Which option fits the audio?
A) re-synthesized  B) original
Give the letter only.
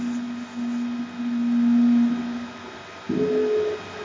B